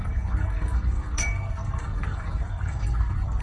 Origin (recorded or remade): remade